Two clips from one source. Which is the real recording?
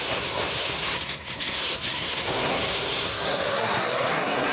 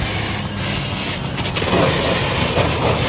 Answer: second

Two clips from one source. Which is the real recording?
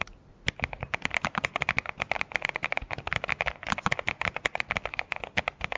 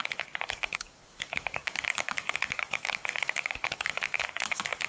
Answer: first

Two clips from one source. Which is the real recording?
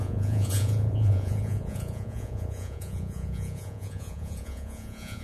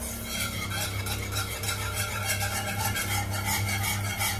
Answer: second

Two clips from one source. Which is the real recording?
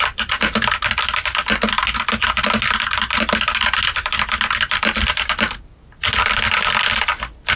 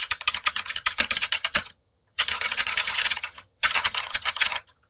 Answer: first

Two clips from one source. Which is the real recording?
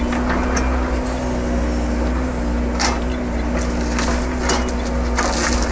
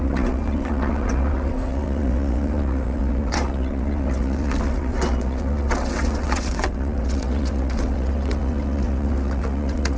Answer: first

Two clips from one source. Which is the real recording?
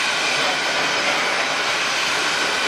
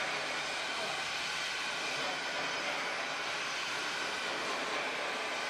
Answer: second